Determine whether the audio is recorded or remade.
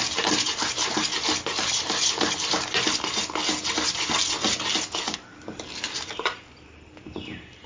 remade